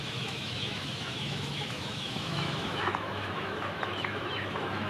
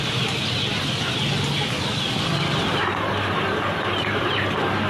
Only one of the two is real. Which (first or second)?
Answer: second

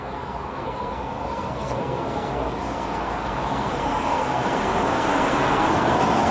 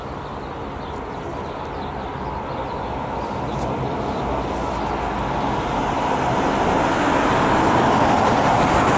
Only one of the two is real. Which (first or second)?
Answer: second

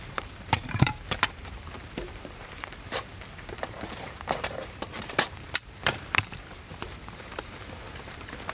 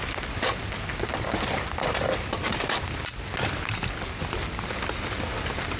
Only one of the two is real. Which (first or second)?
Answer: second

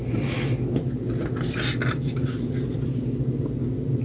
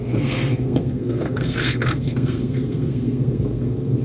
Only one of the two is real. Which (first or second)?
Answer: first